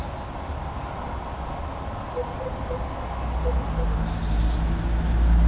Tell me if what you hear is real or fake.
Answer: real